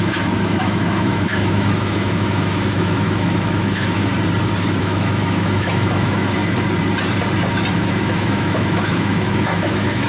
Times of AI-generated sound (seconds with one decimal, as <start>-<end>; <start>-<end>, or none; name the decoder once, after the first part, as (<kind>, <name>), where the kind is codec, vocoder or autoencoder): 0.0-4.1 (autoencoder, DAC-VAE); 4.8-6.4; 7.7-10.1